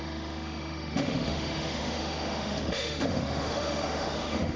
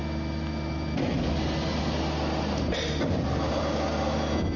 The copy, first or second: first